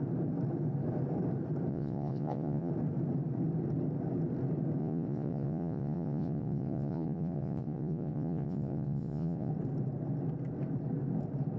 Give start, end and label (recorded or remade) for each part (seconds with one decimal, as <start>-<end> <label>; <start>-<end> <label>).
0.0-1.7 recorded; 1.7-2.7 remade; 2.7-4.8 recorded; 4.8-9.5 remade; 9.5-11.6 recorded